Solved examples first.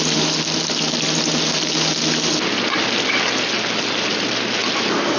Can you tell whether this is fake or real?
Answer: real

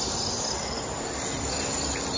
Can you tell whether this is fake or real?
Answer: real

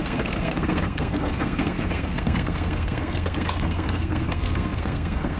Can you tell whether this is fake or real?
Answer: fake